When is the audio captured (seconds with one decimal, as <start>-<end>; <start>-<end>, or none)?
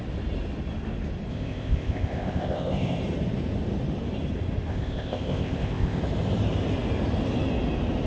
0.0-1.3; 3.0-4.7; 6.0-8.1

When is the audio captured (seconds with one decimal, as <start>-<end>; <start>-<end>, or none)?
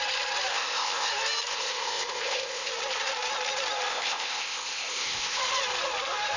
0.0-0.5; 1.1-1.5; 2.7-3.9; 5.4-6.4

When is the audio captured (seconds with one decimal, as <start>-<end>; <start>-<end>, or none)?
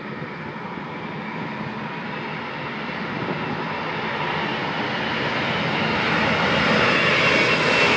0.0-8.0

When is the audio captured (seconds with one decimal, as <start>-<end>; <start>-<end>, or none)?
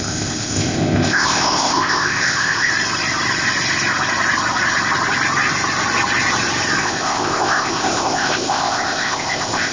2.7-6.8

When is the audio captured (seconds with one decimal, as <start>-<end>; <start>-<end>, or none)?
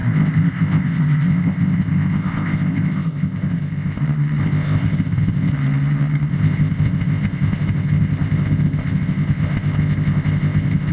4.0-4.4; 5.5-6.3